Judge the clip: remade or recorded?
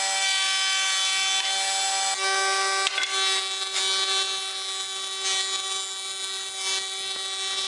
recorded